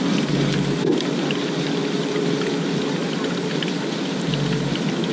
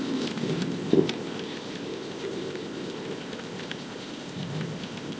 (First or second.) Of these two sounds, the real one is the first